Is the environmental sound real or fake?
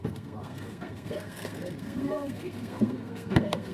fake